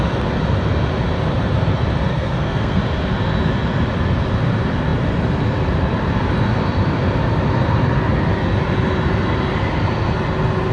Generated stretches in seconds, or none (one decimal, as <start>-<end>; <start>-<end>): 2.1-2.8